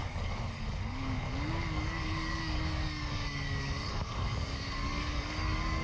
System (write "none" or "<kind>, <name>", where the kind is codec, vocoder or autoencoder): codec, DAC